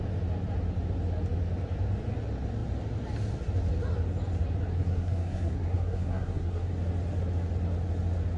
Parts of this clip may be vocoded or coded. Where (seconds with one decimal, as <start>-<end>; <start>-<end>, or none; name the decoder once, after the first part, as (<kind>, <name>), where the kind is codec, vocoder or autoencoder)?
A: 4.7-6.7 (codec, SNAC)